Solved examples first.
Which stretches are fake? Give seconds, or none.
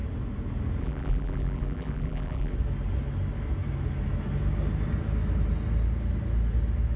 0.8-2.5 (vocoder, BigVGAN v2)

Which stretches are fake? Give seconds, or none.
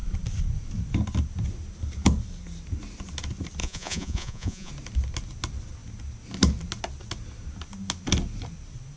3.6-4.7 (vocoder, Vocos)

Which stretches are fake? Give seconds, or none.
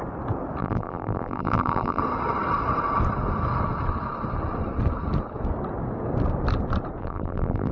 0.6-2.0 (vocoder, BigVGAN v2); 7.0-7.7